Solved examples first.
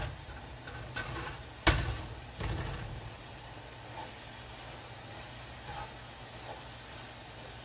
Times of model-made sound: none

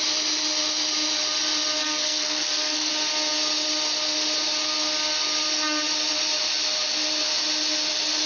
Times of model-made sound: 1.8-2.9 (codec, SNAC)

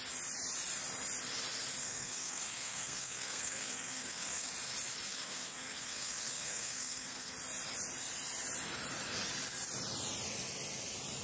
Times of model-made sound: 1.8-4.5 (codec, SNAC); 5.1-7.3